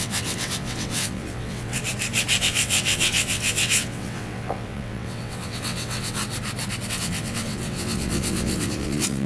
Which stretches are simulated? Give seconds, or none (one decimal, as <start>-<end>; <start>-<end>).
0.0-1.8; 2.4-6.2; 6.9-9.3